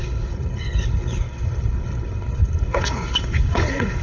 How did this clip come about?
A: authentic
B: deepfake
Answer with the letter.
B